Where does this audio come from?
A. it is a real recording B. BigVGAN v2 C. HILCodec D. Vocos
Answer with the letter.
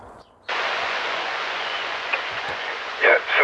D